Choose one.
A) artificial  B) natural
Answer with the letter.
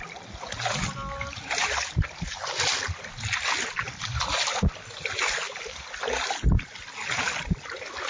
B